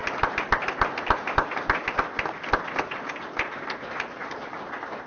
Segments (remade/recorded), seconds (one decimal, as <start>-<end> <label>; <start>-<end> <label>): 0.0-5.1 recorded